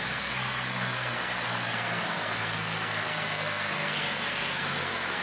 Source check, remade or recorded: remade